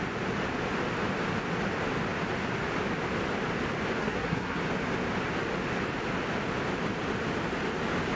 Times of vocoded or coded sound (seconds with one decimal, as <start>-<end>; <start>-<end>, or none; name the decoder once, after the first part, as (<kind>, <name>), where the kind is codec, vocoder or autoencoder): 4.0-4.6 (codec, SNAC)